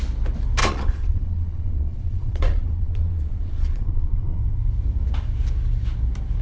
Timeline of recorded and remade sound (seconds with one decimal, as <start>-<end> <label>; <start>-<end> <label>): 0.0-0.6 recorded; 0.6-4.4 remade; 4.4-6.4 recorded